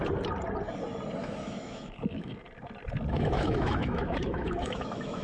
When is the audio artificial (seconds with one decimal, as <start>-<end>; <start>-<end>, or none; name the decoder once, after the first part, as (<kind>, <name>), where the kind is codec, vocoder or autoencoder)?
1.2-2.3 (autoencoder, DAC-VAE); 3.1-5.2